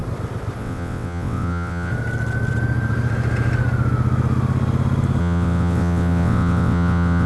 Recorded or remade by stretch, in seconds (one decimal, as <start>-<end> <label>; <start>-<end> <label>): 0.0-0.6 recorded; 0.6-1.9 remade; 1.9-5.2 recorded; 5.2-7.3 remade